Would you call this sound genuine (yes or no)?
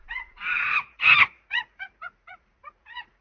no